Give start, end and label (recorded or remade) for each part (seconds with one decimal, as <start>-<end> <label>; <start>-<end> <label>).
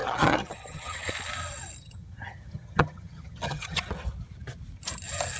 0.0-1.1 remade; 1.1-1.8 recorded; 1.8-3.8 remade; 3.8-5.4 recorded